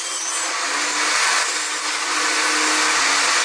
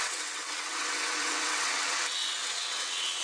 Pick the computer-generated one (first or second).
second